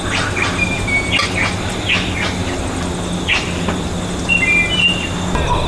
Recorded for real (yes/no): yes